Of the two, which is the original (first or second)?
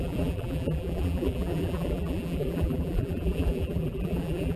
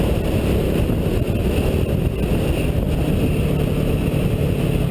second